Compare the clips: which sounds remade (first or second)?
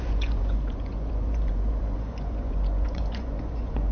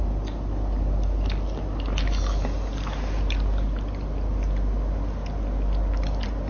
first